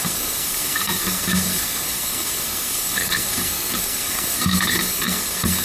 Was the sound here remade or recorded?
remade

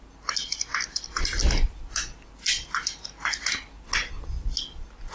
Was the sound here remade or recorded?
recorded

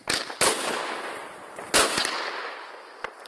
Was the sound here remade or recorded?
recorded